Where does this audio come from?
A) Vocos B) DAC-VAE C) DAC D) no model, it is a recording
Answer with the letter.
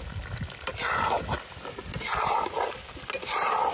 D